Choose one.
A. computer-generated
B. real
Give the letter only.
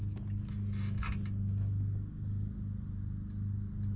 B